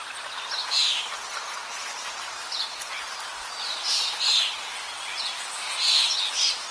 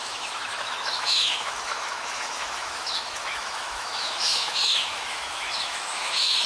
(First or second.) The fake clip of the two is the second